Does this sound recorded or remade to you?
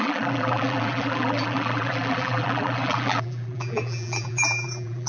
remade